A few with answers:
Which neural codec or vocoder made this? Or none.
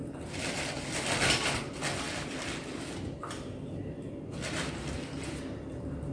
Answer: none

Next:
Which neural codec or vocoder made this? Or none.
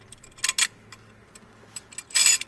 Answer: none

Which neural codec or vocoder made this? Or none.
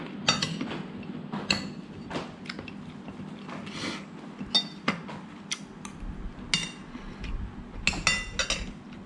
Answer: none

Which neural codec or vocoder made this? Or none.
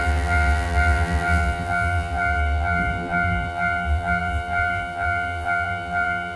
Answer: vocoder, BigVGAN v2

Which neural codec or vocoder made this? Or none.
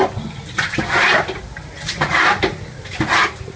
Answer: none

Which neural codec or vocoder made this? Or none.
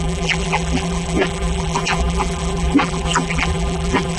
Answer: vocoder, BigVGAN v2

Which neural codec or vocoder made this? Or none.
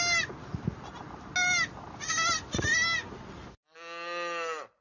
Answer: none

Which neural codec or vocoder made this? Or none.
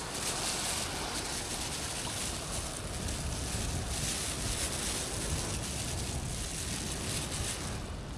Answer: none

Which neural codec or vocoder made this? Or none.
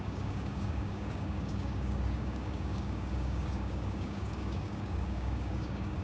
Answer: codec, DAC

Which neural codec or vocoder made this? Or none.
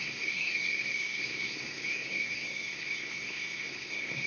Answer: codec, SNAC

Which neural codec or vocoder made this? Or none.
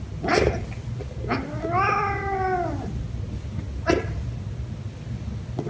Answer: none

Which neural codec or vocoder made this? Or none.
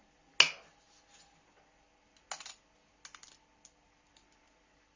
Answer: none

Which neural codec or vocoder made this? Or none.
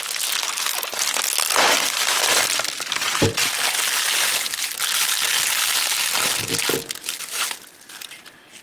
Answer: none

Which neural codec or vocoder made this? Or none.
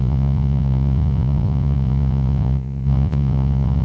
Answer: vocoder, Vocos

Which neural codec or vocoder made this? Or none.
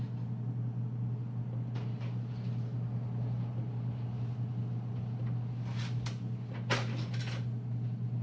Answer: none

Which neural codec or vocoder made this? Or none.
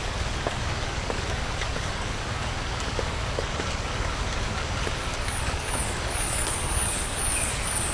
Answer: codec, DAC